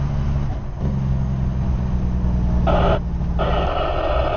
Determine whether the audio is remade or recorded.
recorded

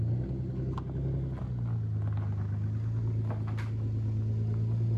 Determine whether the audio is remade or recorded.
recorded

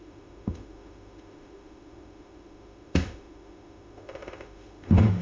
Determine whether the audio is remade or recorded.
remade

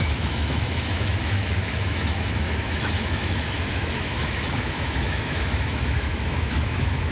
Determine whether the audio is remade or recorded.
remade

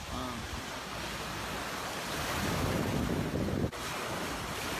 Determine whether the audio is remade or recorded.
recorded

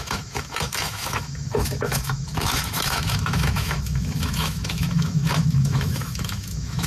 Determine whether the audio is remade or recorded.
remade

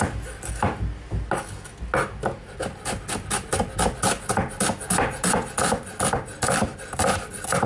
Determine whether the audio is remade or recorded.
recorded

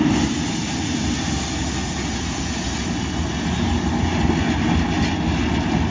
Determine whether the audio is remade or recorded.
recorded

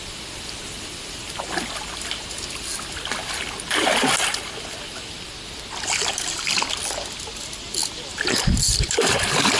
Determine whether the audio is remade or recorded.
recorded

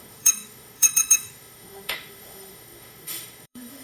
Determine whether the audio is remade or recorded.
remade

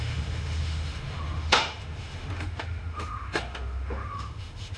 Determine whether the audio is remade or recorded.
remade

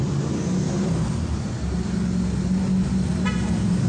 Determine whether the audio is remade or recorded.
recorded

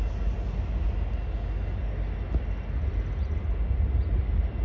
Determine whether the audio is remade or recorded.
recorded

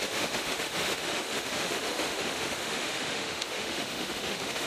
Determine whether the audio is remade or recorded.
remade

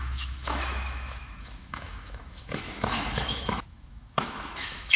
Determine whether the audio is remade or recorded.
remade